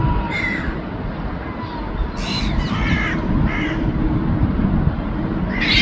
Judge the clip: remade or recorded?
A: recorded